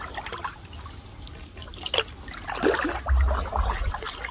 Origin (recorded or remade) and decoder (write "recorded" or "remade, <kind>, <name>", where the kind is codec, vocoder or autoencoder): recorded